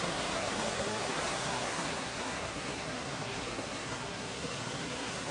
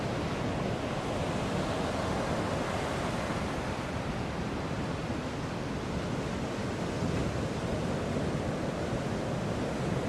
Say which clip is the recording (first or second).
second